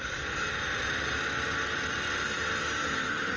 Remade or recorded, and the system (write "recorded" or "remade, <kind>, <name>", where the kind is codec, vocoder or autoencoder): recorded